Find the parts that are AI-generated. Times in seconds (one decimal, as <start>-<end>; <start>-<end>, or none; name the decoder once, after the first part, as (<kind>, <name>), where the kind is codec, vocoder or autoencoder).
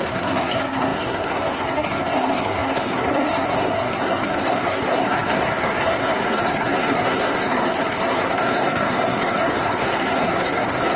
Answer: 0.0-11.0 (codec, SNAC)